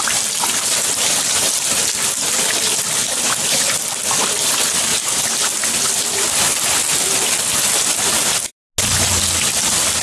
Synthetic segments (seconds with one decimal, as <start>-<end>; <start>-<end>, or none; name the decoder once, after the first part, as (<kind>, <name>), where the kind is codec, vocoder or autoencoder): none